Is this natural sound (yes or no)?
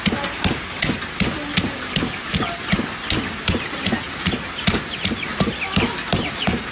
yes